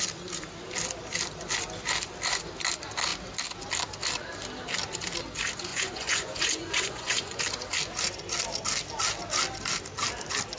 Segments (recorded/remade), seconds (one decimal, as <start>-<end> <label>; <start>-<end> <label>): 0.0-5.7 recorded; 5.7-7.4 remade; 7.4-10.6 recorded

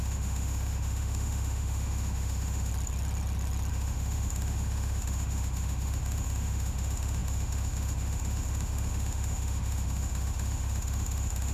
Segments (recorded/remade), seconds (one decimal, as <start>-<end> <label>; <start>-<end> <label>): 0.0-2.7 remade; 2.7-3.7 recorded; 3.7-11.5 remade

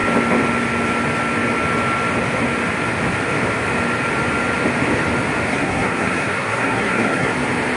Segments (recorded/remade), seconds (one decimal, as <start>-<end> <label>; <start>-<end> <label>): 0.0-5.5 recorded; 5.5-7.3 remade; 7.3-7.8 recorded

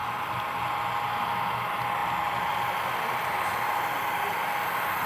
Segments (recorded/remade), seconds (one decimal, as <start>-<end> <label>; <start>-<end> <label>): 0.0-2.0 recorded; 2.0-4.0 remade; 4.0-5.1 recorded

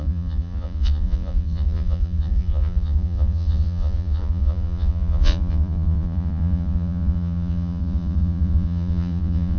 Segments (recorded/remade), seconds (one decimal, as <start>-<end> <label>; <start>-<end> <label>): 0.0-9.6 remade